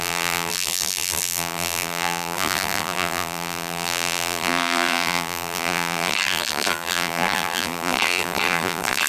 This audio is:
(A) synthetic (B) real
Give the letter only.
A